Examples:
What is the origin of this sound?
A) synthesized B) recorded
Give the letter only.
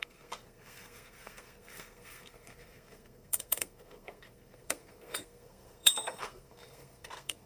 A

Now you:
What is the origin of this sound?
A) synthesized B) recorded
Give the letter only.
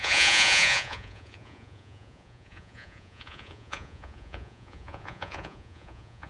A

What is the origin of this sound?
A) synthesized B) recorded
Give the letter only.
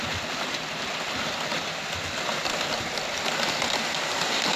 B